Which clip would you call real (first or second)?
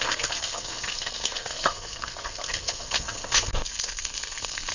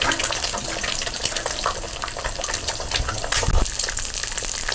second